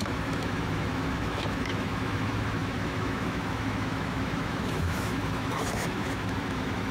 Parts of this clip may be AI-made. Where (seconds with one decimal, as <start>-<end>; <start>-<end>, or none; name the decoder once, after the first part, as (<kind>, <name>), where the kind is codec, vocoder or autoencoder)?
0.0-6.9 (autoencoder, DAC-VAE)